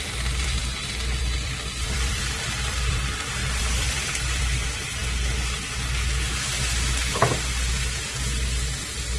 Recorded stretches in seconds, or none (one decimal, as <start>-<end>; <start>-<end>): 0.6-1.2; 5.0-9.2